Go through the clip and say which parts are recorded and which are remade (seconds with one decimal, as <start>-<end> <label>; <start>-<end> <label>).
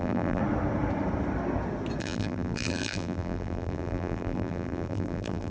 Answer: 0.0-0.4 remade; 0.4-2.0 recorded; 2.0-5.5 remade